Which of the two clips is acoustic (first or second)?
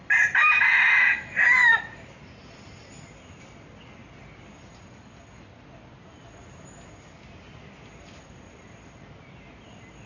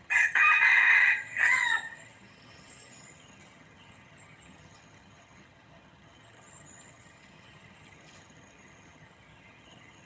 first